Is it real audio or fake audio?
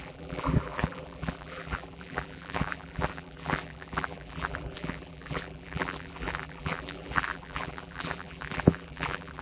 fake